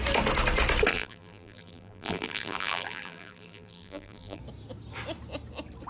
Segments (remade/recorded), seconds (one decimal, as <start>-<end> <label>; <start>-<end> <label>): 0.0-0.9 recorded; 0.9-4.4 remade; 4.4-5.9 recorded